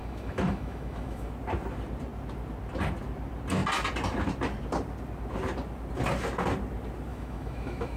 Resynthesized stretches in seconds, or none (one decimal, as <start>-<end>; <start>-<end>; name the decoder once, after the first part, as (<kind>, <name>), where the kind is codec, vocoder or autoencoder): 0.0-1.3 (autoencoder, DAC-VAE); 7.1-8.0